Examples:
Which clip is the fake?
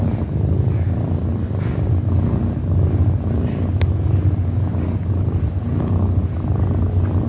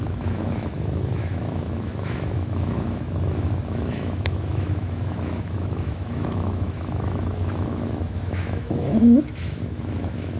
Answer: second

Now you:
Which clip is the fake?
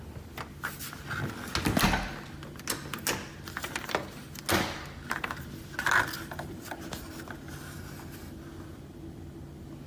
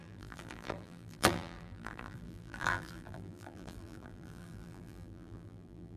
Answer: second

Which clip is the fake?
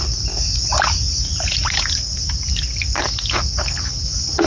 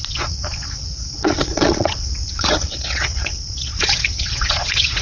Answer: second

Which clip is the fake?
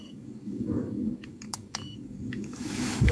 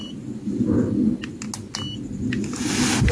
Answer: first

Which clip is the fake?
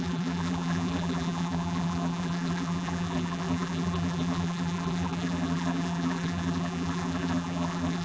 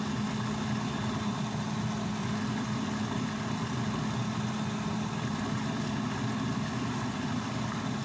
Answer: first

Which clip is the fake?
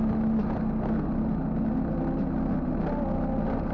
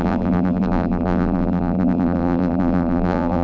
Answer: second